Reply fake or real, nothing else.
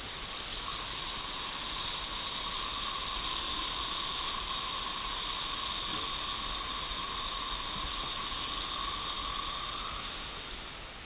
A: real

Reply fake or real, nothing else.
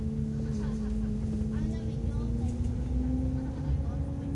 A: real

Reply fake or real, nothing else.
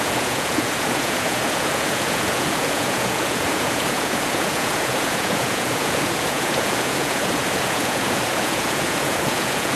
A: fake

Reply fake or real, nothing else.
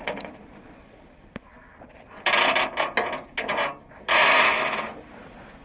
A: real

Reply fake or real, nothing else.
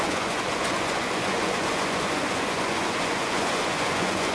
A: fake